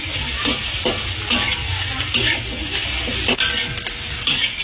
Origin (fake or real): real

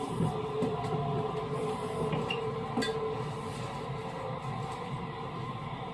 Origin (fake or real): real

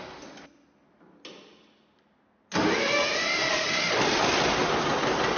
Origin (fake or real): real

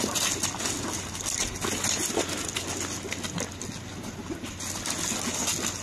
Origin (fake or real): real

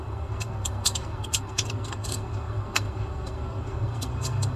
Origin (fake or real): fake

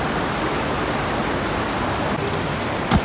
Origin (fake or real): real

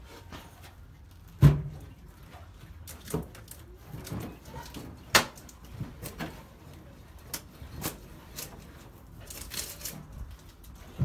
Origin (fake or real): real